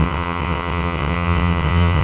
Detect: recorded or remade remade